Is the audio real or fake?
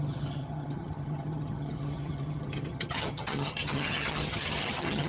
fake